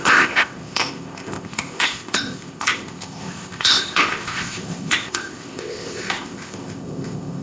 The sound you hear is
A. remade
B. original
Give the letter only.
A